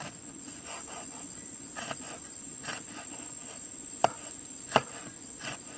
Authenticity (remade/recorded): remade